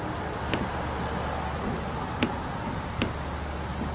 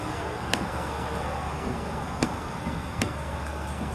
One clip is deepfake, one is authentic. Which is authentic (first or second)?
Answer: first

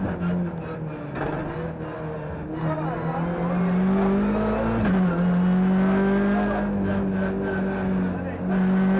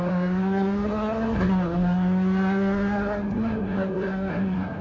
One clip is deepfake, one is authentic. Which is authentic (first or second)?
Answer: first